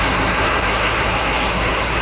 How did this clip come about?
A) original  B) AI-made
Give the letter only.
B